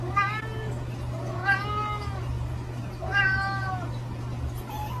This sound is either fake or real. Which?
real